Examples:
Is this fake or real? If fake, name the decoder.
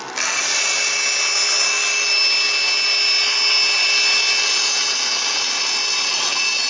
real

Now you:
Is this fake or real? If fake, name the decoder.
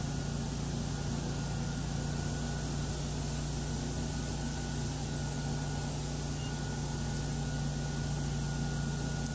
real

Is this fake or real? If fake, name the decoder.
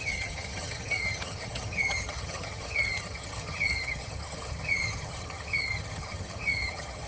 fake, vocoder, HiFi-GAN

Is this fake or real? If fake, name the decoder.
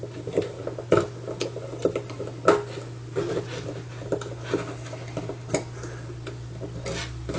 real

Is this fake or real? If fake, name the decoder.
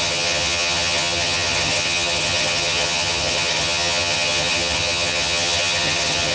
fake, vocoder, HiFi-GAN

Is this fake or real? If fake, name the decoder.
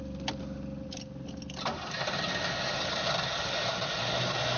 real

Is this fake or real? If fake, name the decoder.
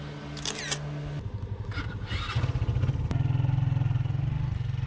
real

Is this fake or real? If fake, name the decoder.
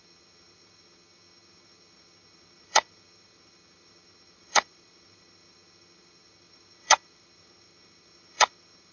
fake, vocoder, HiFi-GAN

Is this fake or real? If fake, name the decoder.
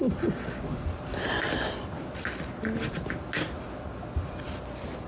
real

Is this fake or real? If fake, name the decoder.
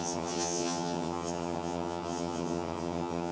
fake, vocoder, HiFi-GAN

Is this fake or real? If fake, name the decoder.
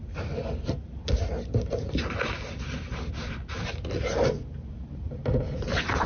real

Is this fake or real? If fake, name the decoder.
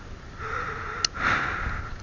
real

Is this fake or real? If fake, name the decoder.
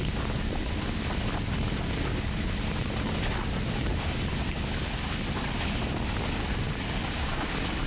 real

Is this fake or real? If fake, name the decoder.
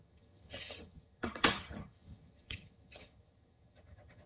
fake, vocoder, HiFi-GAN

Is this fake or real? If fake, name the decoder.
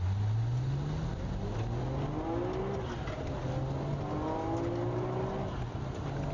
real